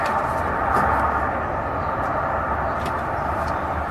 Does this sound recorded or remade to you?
remade